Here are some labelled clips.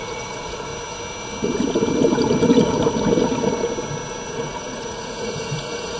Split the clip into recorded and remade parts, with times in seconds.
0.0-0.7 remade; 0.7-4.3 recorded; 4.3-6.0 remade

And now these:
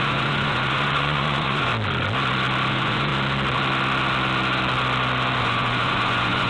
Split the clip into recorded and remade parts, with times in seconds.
0.0-1.7 remade; 1.7-2.7 recorded; 2.7-3.1 remade; 3.1-5.4 recorded; 5.4-6.5 remade

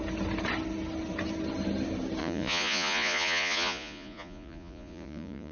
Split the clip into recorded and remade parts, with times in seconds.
0.0-2.2 recorded; 2.2-5.5 remade

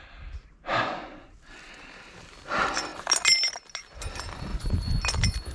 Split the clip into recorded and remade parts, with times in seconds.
0.0-0.7 recorded; 0.7-1.3 remade; 1.3-4.5 recorded; 4.5-5.0 remade; 5.0-5.5 recorded

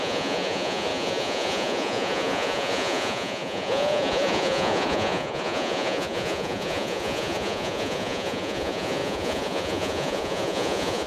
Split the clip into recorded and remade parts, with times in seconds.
0.0-11.1 remade

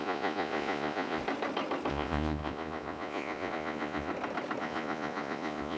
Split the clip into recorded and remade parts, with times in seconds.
0.0-1.2 remade; 1.2-1.9 recorded; 1.9-4.1 remade; 4.1-4.6 recorded; 4.6-5.8 remade

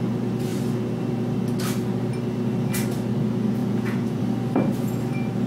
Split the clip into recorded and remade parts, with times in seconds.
0.0-3.6 recorded; 3.6-4.2 remade; 4.2-5.5 recorded